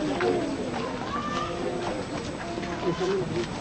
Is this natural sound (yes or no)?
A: yes